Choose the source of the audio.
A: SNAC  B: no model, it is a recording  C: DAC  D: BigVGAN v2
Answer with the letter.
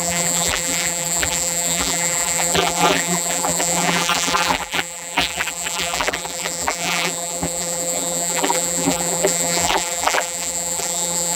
D